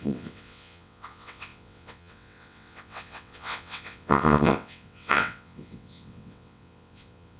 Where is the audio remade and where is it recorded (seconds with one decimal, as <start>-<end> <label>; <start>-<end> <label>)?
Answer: 0.0-7.4 remade